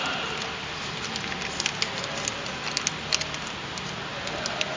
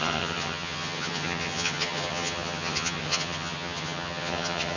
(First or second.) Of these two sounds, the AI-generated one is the second